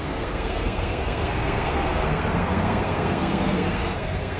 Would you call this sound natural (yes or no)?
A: no